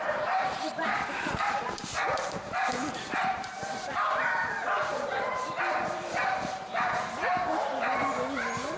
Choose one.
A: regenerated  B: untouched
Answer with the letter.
A